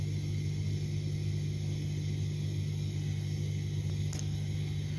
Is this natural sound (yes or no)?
yes